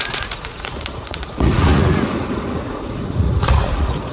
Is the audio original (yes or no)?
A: no